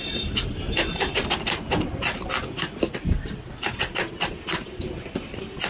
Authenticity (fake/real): real